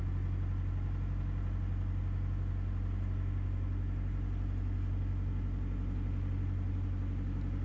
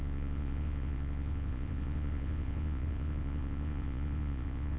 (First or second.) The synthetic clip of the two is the second